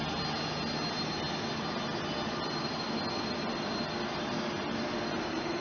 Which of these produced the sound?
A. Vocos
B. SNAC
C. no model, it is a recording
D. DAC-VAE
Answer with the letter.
C